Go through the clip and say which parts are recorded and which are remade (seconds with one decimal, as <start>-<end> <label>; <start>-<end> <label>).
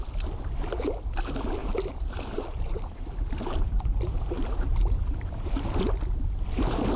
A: 0.0-1.6 recorded; 1.6-5.8 remade; 5.8-7.0 recorded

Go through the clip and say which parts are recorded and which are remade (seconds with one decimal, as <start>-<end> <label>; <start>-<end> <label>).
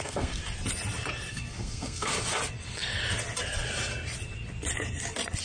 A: 0.0-0.4 remade; 0.4-1.3 recorded; 1.3-2.1 remade; 2.1-5.4 recorded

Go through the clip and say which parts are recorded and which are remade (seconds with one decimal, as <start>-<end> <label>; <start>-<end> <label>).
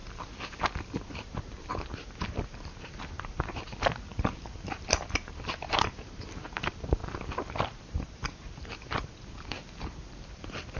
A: 0.0-0.9 recorded; 0.9-7.0 remade; 7.0-7.6 recorded; 7.6-10.8 remade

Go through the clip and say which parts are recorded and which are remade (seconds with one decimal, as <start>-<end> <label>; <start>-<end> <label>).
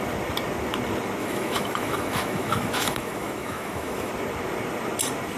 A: 0.0-1.2 recorded; 1.2-4.1 remade; 4.1-5.4 recorded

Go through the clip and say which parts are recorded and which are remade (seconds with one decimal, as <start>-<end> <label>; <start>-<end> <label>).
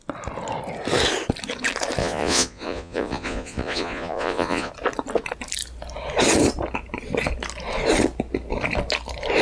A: 0.0-2.0 recorded; 2.0-4.7 remade; 4.7-9.4 recorded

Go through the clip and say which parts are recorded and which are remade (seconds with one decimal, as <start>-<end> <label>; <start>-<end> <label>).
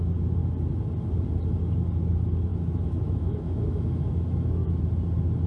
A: 0.0-2.5 recorded; 2.5-4.8 remade; 4.8-5.5 recorded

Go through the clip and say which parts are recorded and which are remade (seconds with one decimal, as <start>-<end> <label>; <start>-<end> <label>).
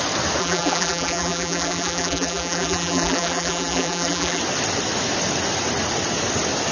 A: 0.0-0.4 recorded; 0.4-4.4 remade; 4.4-6.7 recorded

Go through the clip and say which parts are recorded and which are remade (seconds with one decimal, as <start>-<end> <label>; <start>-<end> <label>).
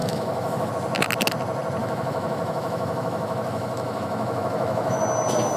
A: 0.0-0.7 remade; 0.7-1.8 recorded; 1.8-5.0 remade; 5.0-5.6 recorded